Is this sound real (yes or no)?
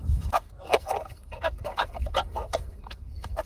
no